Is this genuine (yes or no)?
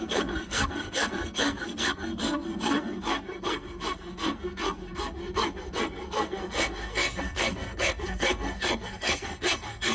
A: no